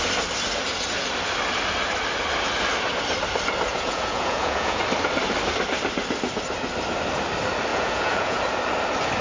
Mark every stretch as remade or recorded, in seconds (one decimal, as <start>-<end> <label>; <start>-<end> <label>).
0.0-3.7 recorded; 3.7-4.8 remade; 4.8-7.7 recorded; 7.7-8.4 remade; 8.4-9.2 recorded